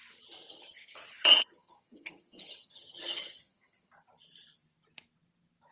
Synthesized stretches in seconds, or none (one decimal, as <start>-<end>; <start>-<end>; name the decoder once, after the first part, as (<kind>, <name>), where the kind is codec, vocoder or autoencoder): 0.5-3.9 (vocoder, HiFi-GAN)